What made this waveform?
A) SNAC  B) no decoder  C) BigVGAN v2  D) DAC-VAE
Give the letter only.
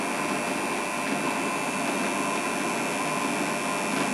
B